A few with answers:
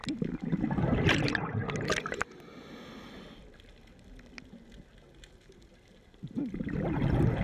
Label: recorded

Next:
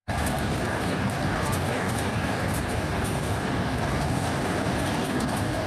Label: remade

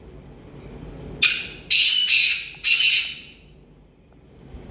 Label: recorded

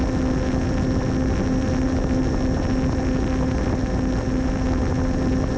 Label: recorded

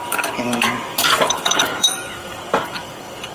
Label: remade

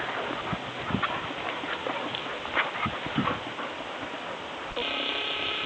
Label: recorded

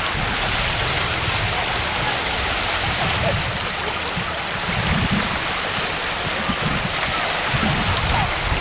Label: recorded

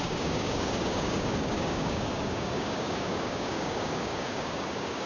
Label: remade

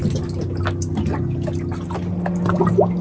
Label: recorded